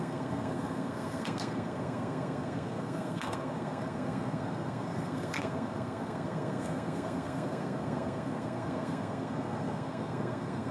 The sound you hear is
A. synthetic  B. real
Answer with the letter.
A